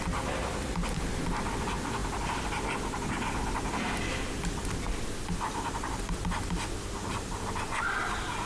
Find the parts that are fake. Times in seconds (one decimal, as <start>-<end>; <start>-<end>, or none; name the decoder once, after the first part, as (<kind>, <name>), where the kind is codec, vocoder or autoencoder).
none